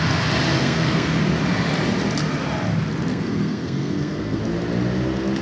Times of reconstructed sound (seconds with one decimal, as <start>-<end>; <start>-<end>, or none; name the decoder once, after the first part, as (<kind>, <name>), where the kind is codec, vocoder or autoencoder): 0.6-1.2 (codec, SNAC); 3.1-4.4